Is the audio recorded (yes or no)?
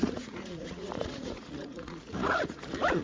no